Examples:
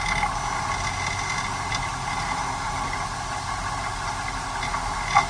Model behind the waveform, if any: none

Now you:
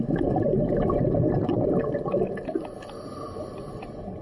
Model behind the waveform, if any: none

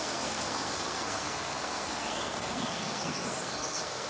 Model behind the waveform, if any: codec, SNAC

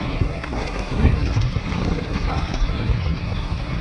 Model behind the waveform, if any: codec, SNAC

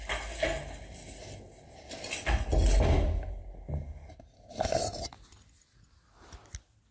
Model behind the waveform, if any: none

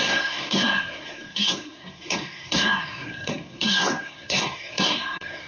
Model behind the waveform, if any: codec, SNAC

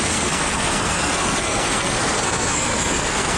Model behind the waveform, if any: codec, SNAC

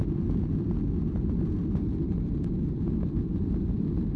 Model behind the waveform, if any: none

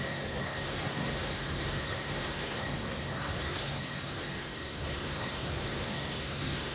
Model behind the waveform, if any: codec, SNAC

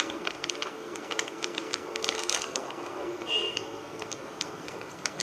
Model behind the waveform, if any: codec, SNAC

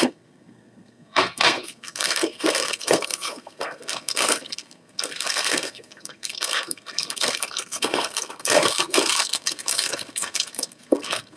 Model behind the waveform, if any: codec, SNAC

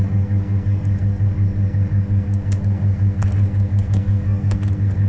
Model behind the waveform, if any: codec, SNAC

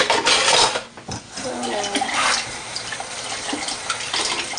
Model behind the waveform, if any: none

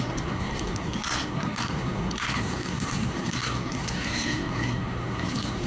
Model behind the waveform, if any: codec, SNAC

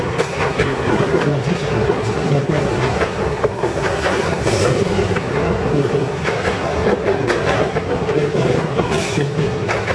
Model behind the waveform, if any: codec, SNAC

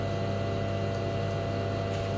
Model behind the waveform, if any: none